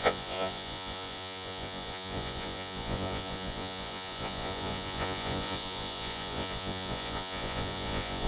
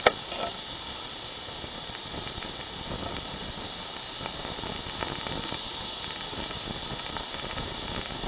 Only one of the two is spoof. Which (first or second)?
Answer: first